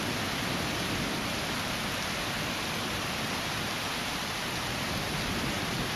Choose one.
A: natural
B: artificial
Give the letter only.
A